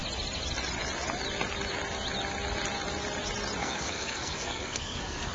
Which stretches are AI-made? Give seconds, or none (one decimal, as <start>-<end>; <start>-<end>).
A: 3.6-5.3